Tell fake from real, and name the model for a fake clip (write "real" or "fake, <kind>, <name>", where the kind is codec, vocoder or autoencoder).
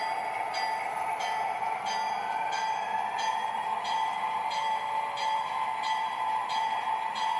fake, vocoder, BigVGAN v2